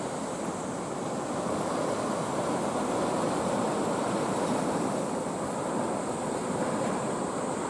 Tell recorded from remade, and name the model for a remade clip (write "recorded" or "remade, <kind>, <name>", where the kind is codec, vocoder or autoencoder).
recorded